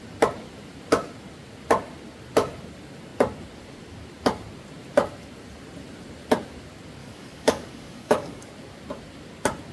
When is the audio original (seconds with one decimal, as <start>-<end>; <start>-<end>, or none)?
0.0-7.0; 8.5-9.7